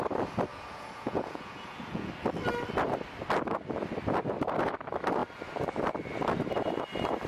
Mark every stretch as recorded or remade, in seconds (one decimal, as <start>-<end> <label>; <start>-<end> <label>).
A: 0.0-0.5 recorded; 0.5-2.1 remade; 2.1-7.3 recorded